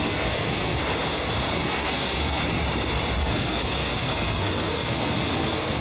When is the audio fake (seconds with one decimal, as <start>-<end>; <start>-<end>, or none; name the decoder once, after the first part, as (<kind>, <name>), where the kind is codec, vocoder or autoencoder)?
0.0-0.8 (codec, SNAC); 1.5-2.4; 3.2-5.8